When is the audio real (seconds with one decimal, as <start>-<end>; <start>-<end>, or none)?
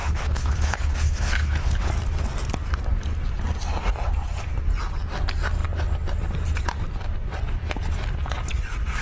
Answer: 1.9-9.0